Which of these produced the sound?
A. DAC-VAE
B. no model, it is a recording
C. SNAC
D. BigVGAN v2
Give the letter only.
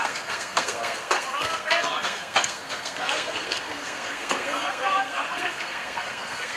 C